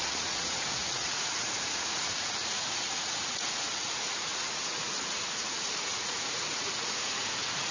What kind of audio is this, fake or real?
fake